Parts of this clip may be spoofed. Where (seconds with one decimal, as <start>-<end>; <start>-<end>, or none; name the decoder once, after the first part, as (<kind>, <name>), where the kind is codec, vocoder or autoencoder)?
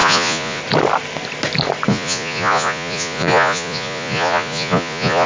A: 0.0-0.6 (vocoder, Vocos); 1.9-5.3